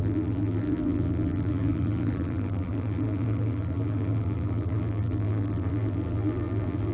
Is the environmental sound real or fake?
fake